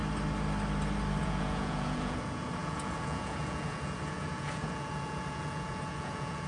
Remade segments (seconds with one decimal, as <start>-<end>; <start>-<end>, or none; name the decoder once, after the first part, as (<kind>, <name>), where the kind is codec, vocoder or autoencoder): 1.2-6.5 (vocoder, Vocos)